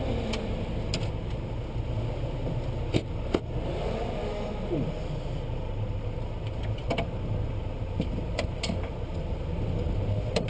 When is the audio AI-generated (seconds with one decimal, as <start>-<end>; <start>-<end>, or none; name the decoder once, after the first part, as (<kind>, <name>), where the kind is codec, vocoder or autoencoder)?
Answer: none